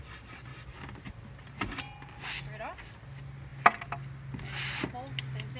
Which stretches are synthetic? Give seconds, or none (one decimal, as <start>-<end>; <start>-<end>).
0.5-1.1